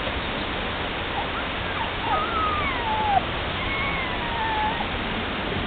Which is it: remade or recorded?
recorded